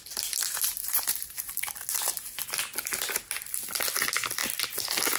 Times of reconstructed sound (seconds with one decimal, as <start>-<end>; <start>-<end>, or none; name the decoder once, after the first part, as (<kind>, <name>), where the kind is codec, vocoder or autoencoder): 0.8-1.5 (vocoder, BigVGAN v2)